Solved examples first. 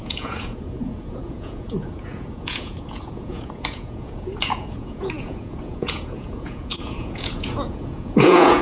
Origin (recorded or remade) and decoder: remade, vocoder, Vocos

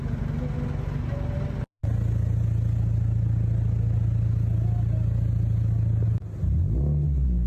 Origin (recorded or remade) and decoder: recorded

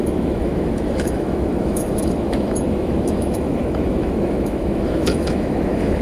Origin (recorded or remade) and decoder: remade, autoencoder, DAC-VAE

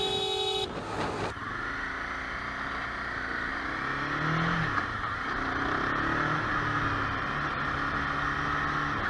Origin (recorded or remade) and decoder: recorded